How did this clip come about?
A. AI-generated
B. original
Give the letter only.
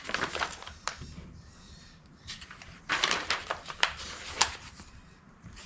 A